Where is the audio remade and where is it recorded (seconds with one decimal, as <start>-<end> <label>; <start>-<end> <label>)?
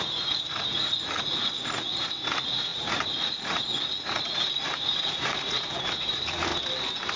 0.0-6.5 remade; 6.5-7.2 recorded